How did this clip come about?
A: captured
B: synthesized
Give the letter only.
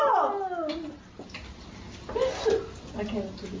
A